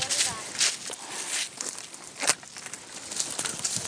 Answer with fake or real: real